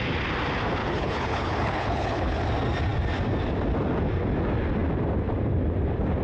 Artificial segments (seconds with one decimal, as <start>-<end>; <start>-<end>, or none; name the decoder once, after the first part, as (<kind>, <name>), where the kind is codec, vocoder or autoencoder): 0.8-2.4 (codec, HILCodec)